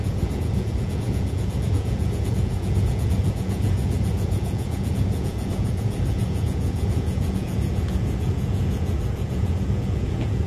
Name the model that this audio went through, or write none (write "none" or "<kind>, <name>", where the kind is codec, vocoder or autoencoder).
vocoder, Vocos